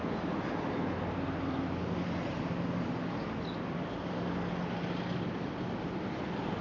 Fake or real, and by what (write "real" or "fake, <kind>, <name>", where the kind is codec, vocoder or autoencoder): real